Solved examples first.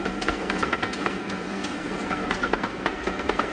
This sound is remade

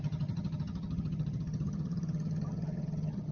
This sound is remade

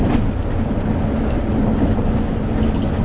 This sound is recorded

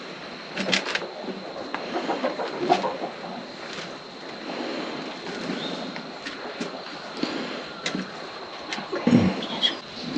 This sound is recorded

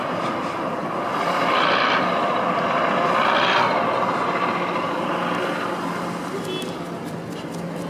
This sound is recorded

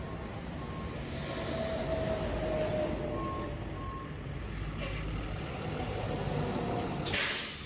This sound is recorded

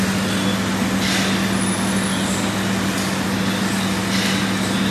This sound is recorded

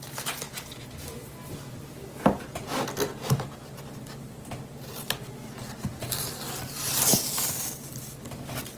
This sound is recorded